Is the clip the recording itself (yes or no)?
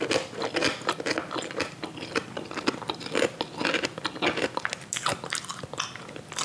yes